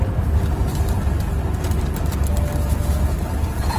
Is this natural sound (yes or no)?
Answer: yes